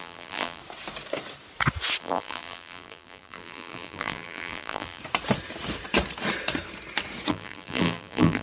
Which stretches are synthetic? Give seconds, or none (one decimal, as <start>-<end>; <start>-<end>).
0.0-0.6; 2.0-5.0; 7.3-8.4